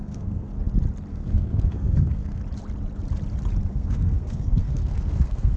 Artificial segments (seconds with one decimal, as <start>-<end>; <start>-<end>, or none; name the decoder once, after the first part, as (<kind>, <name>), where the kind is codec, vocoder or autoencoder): 0.0-0.5 (codec, SNAC); 1.1-2.4; 3.7-5.6